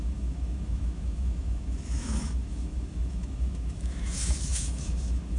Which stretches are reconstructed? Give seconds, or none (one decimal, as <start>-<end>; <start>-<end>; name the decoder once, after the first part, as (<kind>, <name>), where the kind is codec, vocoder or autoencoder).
0.0-5.4 (autoencoder, DAC-VAE)